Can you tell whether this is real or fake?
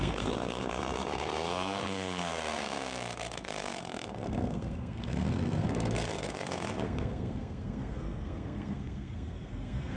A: fake